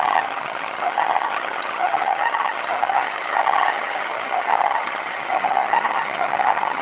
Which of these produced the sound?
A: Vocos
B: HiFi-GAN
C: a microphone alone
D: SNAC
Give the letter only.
B